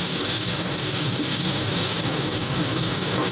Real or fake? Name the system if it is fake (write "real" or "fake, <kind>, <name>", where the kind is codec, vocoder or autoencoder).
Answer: fake, codec, DAC